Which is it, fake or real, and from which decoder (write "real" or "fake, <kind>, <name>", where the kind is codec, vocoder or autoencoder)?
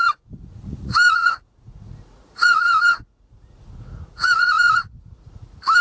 fake, vocoder, Vocos